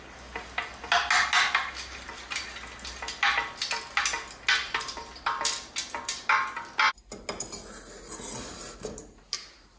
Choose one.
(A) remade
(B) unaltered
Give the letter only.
B